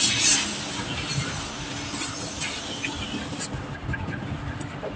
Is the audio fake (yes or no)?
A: no